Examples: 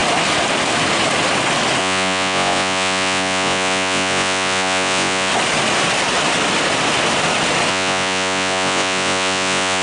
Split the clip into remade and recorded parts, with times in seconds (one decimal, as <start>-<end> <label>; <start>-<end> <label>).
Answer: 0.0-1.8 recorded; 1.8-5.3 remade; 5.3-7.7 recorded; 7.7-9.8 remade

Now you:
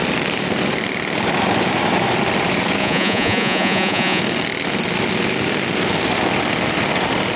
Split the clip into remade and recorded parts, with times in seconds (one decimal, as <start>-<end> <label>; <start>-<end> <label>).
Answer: 0.0-2.8 recorded; 2.8-4.2 remade; 4.2-7.4 recorded

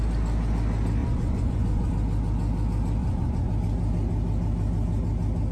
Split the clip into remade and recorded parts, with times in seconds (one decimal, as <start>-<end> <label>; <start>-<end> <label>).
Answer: 0.0-1.0 recorded; 1.0-1.9 remade; 1.9-3.0 recorded; 3.0-3.5 remade; 3.5-5.5 recorded

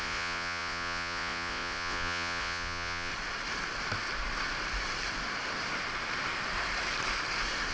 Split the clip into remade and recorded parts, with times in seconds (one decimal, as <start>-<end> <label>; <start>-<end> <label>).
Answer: 0.0-3.1 remade; 3.1-7.7 recorded

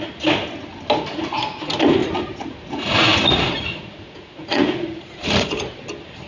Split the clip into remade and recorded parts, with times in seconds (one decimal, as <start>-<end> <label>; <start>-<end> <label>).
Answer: 0.0-2.0 recorded; 2.0-5.8 remade; 5.8-6.3 recorded

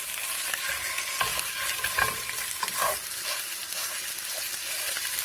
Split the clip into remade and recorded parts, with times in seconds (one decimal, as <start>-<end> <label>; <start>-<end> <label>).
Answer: 0.0-5.2 recorded